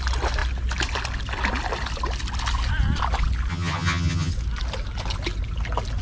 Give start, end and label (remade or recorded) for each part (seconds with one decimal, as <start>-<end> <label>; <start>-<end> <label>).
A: 0.0-3.5 recorded; 3.5-4.3 remade; 4.3-6.0 recorded